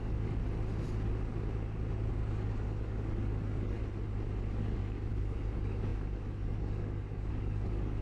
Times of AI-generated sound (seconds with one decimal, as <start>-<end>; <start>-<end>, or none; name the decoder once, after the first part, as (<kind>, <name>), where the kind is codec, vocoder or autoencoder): 0.0-0.4 (codec, DAC); 2.1-3.8; 4.4-8.0